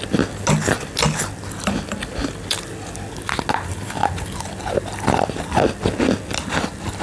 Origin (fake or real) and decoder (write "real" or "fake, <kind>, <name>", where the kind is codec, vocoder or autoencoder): real